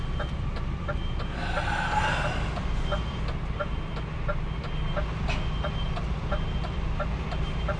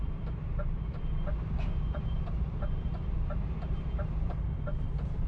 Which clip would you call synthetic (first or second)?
second